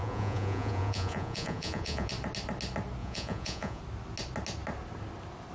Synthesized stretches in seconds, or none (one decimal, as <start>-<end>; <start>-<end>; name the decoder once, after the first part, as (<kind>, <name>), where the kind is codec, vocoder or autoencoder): 0.0-2.1 (vocoder, Vocos); 3.0-3.8